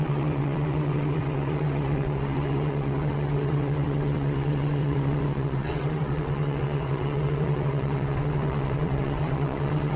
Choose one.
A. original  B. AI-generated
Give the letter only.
B